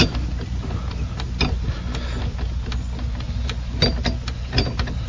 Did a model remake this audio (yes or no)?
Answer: no